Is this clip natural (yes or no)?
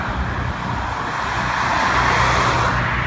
yes